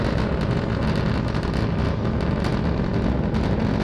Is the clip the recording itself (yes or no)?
yes